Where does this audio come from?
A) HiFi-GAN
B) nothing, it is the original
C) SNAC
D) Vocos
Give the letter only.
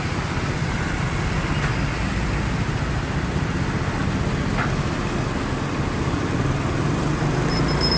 B